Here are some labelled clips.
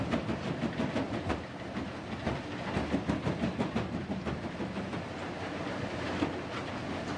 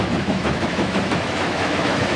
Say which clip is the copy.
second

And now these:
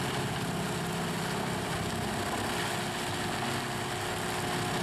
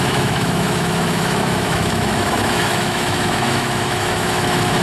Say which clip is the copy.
second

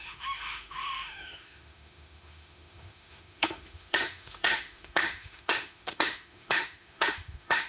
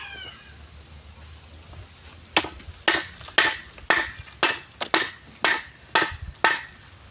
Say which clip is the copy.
first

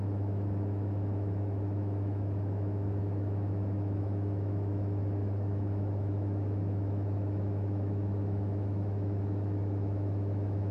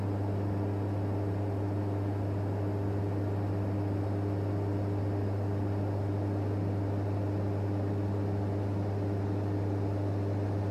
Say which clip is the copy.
first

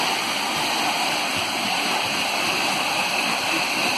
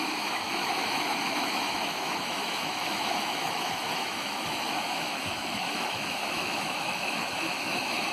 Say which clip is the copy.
second